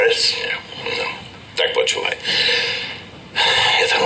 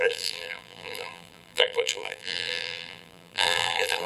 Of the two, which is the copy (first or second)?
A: second